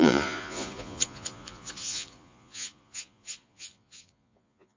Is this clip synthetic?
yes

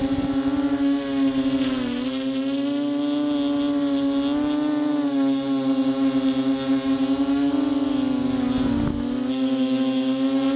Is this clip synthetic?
no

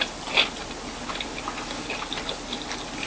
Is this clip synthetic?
no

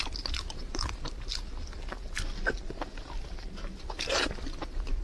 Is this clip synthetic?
no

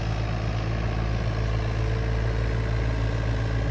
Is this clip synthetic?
no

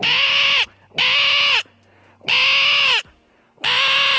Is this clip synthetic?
no